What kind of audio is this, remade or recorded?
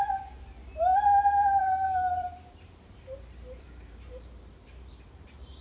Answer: remade